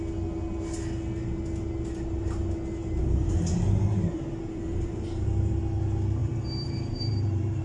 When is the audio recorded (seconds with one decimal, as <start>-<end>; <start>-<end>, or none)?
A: 0.0-2.8; 5.6-6.2

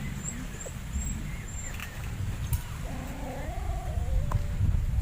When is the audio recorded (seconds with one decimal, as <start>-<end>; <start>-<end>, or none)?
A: 0.0-5.0

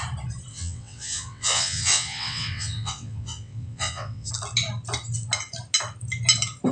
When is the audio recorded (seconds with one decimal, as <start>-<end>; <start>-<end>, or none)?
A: 0.0-0.5; 4.3-6.7